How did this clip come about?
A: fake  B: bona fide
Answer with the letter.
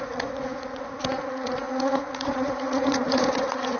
A